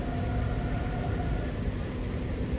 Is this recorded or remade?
recorded